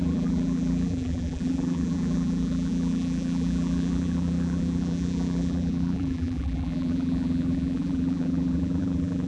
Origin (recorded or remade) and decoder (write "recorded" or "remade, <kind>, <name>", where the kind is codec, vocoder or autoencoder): remade, vocoder, BigVGAN v2